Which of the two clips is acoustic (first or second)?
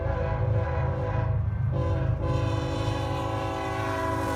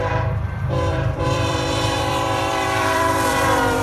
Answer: first